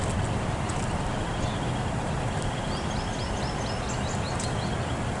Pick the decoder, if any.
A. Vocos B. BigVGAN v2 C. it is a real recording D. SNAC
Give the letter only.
C